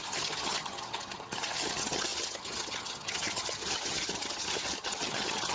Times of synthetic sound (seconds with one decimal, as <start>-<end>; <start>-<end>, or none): 0.0-5.5